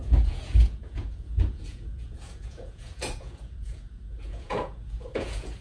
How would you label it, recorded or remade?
remade